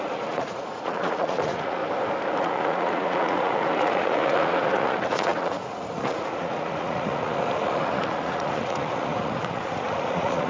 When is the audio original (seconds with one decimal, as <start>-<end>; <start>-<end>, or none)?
1.8-2.4